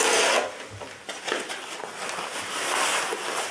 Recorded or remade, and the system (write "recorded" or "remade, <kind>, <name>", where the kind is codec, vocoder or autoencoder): recorded